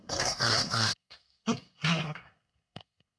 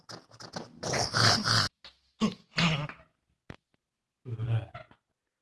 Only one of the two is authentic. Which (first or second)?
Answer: second